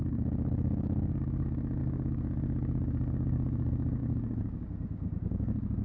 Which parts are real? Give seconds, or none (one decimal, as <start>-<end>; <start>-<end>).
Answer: none